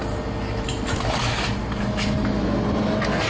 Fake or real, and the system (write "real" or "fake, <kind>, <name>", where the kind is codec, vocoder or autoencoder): real